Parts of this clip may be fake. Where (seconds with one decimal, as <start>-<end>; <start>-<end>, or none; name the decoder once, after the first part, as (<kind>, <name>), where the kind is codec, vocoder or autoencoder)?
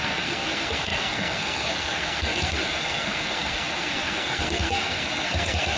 0.0-5.8 (codec, SNAC)